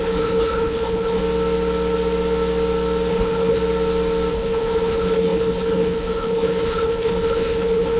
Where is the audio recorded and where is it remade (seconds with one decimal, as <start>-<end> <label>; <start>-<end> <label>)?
0.0-1.2 remade; 1.2-3.1 recorded; 3.1-3.6 remade; 3.6-4.3 recorded; 4.3-8.0 remade

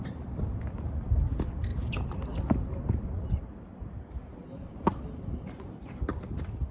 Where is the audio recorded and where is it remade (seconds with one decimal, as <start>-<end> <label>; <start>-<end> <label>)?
0.0-1.7 remade; 1.7-2.9 recorded; 2.9-4.3 remade; 4.3-6.7 recorded

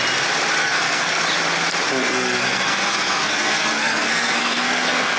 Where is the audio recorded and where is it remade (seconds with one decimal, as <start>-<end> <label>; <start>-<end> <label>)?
0.0-0.6 recorded; 0.6-1.2 remade; 1.2-2.0 recorded; 2.0-5.2 remade

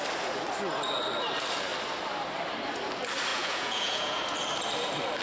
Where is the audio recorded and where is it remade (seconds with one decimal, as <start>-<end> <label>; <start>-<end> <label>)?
0.0-3.3 recorded; 3.3-4.2 remade; 4.2-5.2 recorded

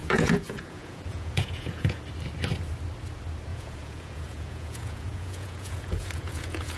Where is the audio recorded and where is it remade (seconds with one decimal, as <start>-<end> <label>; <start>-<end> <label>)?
0.0-2.0 remade; 2.0-3.5 recorded; 3.5-6.8 remade

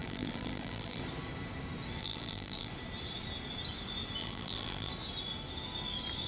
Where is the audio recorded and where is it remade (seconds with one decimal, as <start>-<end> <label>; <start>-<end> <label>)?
0.0-1.0 remade; 1.0-2.0 recorded; 2.0-2.7 remade; 2.7-4.2 recorded; 4.2-4.9 remade; 4.9-6.3 recorded

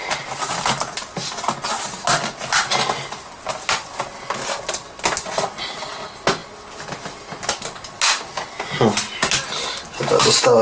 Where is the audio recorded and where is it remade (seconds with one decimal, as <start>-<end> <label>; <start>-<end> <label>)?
0.0-10.6 recorded

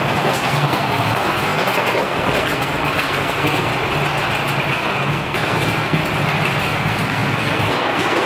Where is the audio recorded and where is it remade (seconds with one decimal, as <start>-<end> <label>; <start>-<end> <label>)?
0.0-3.7 remade; 3.7-4.7 recorded; 4.7-6.0 remade; 6.0-6.6 recorded; 6.6-8.3 remade